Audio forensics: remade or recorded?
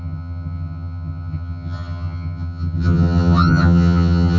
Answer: remade